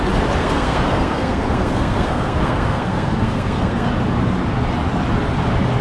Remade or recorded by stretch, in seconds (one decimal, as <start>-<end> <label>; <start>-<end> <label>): 0.0-0.4 recorded; 0.4-3.9 remade; 3.9-5.8 recorded